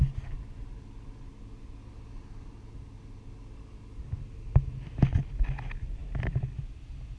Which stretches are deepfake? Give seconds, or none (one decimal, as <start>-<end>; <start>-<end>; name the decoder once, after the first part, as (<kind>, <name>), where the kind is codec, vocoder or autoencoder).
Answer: none